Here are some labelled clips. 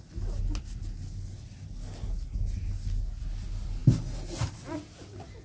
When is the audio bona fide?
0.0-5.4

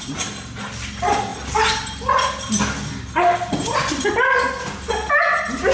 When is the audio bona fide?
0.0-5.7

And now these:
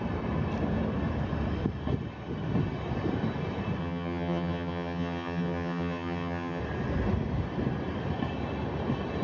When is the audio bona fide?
0.0-3.8; 6.6-9.2

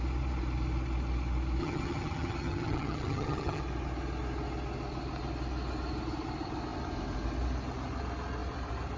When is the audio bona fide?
0.0-1.6; 3.6-9.0